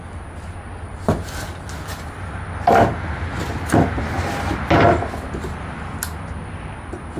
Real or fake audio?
real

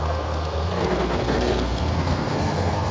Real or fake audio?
fake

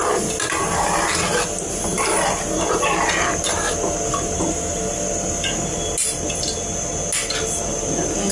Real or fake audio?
real